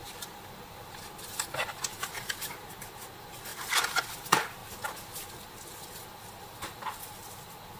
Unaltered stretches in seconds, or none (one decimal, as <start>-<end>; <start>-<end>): 0.7-7.8